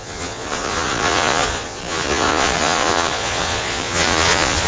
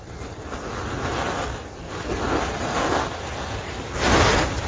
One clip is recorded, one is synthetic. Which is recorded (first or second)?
second